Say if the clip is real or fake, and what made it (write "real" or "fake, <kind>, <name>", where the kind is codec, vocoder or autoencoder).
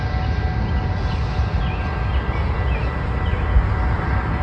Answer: real